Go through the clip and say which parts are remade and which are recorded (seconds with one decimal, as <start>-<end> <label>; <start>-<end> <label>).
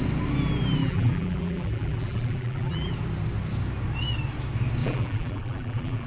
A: 0.0-0.8 recorded; 0.8-2.9 remade; 2.9-4.8 recorded; 4.8-6.1 remade